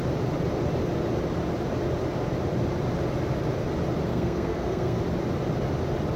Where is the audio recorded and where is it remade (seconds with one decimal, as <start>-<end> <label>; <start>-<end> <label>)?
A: 0.0-4.1 recorded; 4.1-5.0 remade; 5.0-6.2 recorded